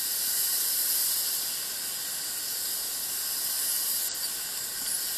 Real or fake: real